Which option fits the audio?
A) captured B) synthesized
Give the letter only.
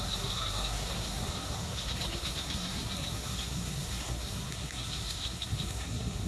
B